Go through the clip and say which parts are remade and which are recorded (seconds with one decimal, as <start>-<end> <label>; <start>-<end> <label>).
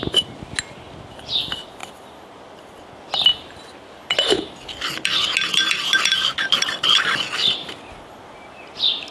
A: 0.0-9.1 recorded